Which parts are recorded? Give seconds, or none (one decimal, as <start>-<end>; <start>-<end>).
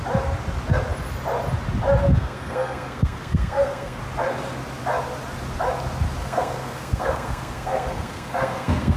0.0-2.0; 4.0-6.2